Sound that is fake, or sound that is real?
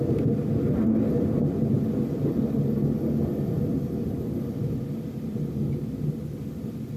real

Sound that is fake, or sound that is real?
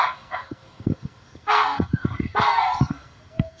fake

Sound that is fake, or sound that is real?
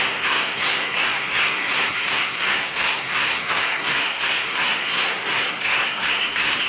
fake